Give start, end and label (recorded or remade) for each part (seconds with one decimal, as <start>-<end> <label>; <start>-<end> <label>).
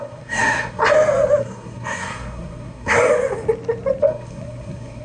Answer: 0.0-0.8 remade; 0.8-1.4 recorded; 1.4-3.1 remade; 3.1-4.0 recorded; 4.0-5.0 remade